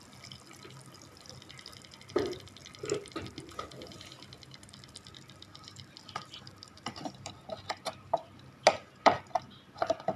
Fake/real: real